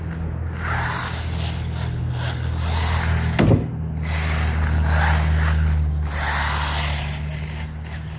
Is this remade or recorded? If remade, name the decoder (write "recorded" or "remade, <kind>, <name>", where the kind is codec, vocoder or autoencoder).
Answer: recorded